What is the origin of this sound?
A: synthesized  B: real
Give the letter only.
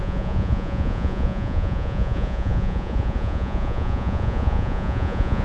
A